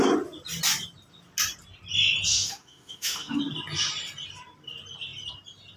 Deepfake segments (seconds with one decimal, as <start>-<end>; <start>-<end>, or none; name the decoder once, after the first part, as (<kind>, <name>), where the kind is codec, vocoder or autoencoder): 2.3-3.4 (autoencoder, DAC-VAE)